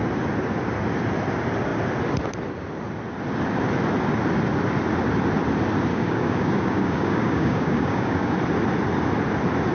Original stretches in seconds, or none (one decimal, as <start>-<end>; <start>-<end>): 0.0-5.9; 8.3-9.7